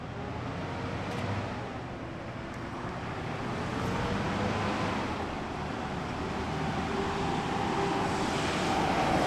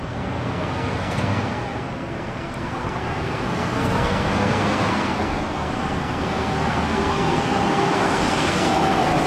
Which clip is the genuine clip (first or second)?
first